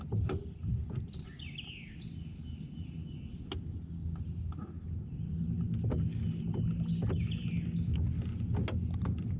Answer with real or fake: real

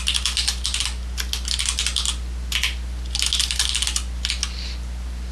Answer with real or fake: real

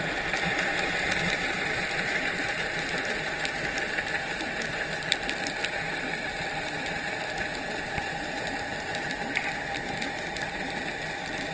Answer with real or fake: real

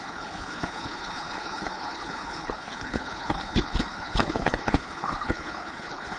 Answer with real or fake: fake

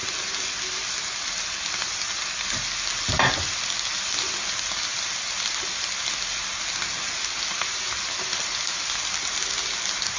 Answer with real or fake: real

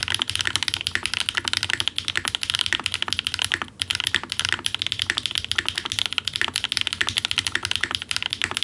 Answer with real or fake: real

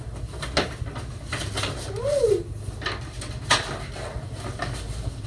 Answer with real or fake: real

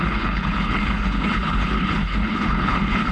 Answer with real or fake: fake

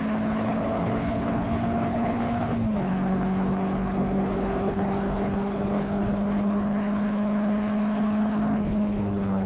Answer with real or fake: fake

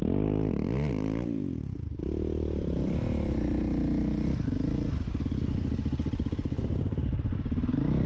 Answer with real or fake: real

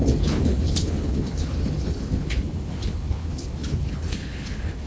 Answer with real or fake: fake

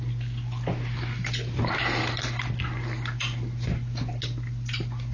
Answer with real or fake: real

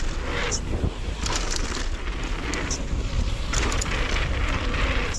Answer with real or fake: real